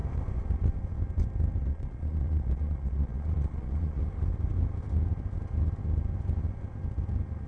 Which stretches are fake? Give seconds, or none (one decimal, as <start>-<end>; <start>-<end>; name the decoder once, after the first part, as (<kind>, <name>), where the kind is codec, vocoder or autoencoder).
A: 1.6-4.0 (vocoder, Vocos)